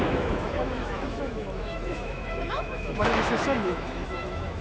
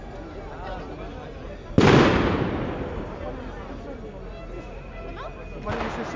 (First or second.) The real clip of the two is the second